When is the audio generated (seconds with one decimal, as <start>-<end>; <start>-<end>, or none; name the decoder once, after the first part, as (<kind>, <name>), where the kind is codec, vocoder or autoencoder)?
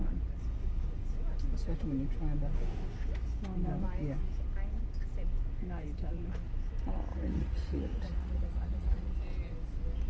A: 7.1-9.1 (vocoder, Vocos)